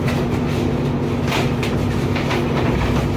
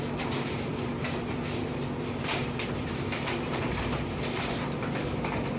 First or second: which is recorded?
first